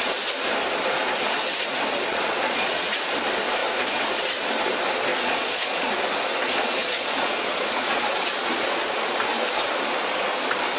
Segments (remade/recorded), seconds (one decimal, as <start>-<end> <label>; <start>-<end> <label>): 0.0-2.1 recorded; 2.1-2.9 remade; 2.9-5.1 recorded; 5.1-5.9 remade; 5.9-6.8 recorded; 6.8-9.0 remade; 9.0-10.8 recorded